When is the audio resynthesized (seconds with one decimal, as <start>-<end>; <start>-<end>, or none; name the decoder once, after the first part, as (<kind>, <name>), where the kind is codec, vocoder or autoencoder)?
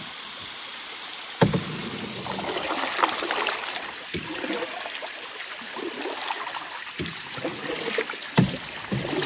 0.0-9.3 (vocoder, BigVGAN v2)